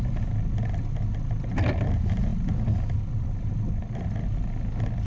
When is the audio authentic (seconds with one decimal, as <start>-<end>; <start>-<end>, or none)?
0.0-5.1